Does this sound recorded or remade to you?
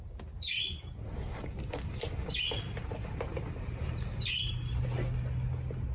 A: recorded